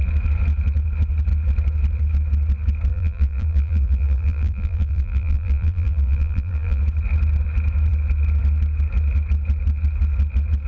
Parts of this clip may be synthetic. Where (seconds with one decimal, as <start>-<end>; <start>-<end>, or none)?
2.9-6.8